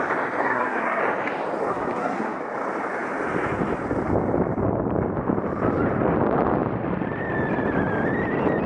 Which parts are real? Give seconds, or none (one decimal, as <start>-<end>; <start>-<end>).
0.0-0.4; 1.0-1.7; 2.4-8.7